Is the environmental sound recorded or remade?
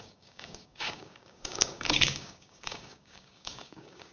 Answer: remade